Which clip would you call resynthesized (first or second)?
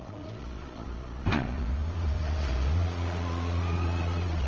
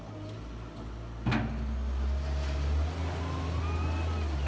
first